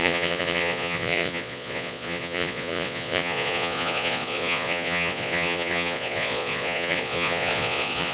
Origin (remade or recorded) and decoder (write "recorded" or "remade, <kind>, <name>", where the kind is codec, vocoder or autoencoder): remade, vocoder, Vocos